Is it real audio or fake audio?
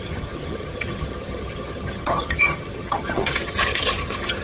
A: fake